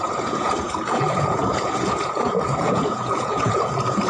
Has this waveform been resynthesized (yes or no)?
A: yes